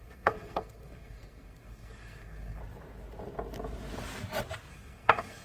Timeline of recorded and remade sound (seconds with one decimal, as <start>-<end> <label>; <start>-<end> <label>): 0.0-2.6 remade; 2.6-4.7 recorded; 4.7-5.4 remade